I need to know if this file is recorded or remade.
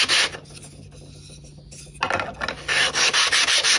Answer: recorded